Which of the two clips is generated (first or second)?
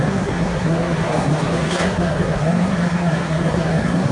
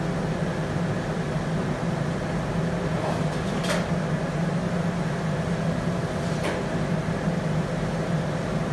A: first